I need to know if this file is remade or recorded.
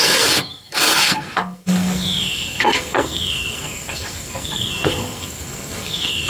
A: remade